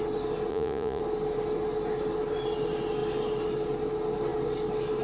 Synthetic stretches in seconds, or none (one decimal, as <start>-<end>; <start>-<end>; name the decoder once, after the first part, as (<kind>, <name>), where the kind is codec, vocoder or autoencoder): 0.5-1.0 (vocoder, Vocos)

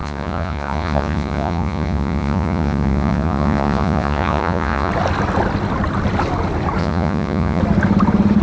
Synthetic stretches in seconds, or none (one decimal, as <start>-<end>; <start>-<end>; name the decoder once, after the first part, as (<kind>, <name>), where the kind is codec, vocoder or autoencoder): 0.0-4.9 (vocoder, Vocos); 6.8-7.6

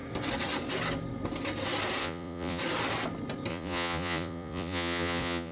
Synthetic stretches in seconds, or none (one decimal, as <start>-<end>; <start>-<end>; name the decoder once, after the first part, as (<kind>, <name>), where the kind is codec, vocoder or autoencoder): 2.0-2.6 (vocoder, Vocos); 3.5-5.5

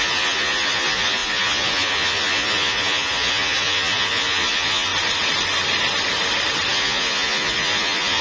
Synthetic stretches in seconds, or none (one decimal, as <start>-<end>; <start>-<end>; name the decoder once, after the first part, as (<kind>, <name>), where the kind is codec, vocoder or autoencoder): 0.0-4.9 (vocoder, Vocos); 6.7-8.2

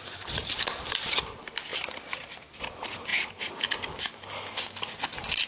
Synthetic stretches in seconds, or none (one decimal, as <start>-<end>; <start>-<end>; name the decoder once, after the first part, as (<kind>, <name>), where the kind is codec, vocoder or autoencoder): none